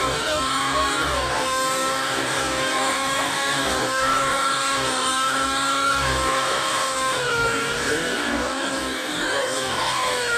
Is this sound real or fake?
fake